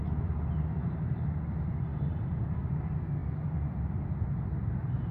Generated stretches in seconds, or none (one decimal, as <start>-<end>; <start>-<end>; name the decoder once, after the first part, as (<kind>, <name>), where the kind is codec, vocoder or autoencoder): 0.8-1.4 (vocoder, BigVGAN v2); 1.9-2.8